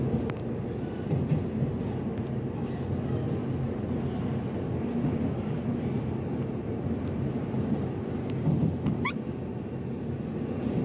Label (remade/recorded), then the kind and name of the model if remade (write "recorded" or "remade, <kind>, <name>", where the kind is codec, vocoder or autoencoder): recorded